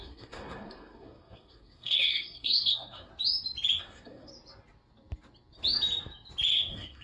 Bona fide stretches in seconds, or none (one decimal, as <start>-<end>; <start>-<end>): 3.1-3.8; 4.3-6.5